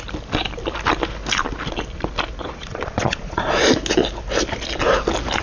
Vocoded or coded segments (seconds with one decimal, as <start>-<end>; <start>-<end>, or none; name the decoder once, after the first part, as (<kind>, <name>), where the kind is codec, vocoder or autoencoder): 2.4-3.7 (vocoder, Vocos)